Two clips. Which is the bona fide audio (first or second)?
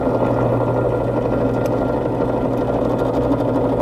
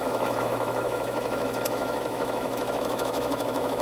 first